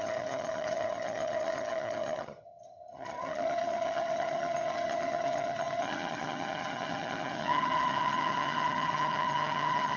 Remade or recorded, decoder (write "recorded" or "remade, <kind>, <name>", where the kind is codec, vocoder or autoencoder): remade, vocoder, HiFi-GAN